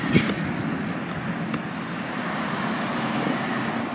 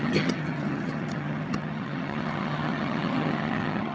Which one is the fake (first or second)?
second